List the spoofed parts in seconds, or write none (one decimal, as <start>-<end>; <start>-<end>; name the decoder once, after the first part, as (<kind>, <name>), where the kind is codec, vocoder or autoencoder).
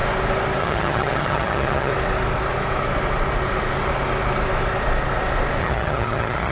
0.6-1.9 (vocoder, HiFi-GAN); 5.6-6.5